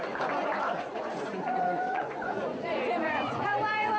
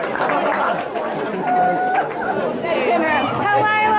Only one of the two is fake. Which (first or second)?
first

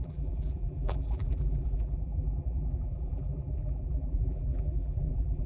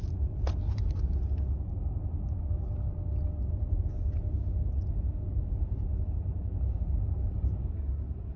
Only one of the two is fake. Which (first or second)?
first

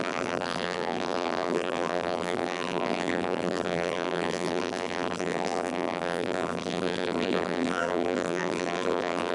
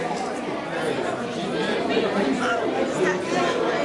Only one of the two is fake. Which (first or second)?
first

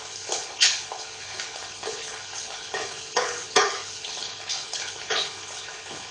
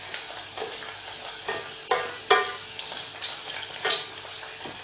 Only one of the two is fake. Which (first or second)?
first